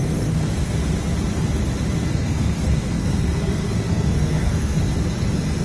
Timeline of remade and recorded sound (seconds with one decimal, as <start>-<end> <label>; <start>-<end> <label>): 0.0-0.7 remade; 0.7-2.1 recorded; 2.1-4.8 remade; 4.8-5.6 recorded